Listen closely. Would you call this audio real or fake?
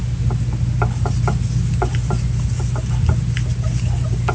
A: real